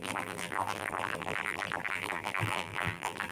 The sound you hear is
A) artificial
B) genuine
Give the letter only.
A